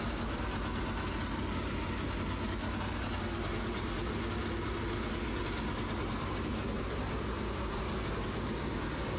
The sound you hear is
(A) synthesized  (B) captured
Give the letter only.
B